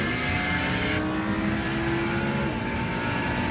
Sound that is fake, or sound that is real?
real